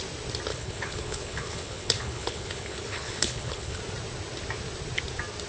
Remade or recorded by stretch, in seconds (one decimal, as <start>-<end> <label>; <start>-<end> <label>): 0.0-0.5 recorded; 0.5-3.8 remade; 3.8-5.5 recorded